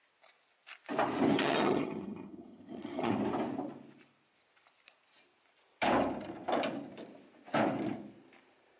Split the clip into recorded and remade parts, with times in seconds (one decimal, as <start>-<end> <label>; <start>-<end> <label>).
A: 0.0-1.3 recorded; 1.3-3.1 remade; 3.1-8.8 recorded